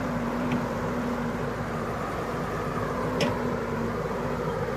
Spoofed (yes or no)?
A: yes